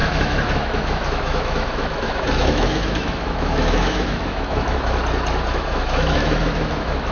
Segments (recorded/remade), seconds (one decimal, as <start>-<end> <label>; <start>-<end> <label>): 0.0-5.0 remade; 5.0-5.5 recorded; 5.5-7.1 remade